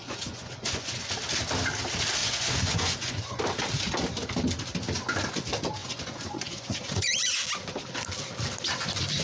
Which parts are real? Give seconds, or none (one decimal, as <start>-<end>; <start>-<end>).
1.0-2.2; 3.4-5.8; 7.3-9.2